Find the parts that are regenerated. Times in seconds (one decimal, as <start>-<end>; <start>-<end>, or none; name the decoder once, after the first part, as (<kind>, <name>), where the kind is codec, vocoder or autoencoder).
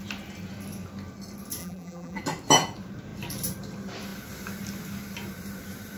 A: 1.6-2.2 (vocoder, BigVGAN v2)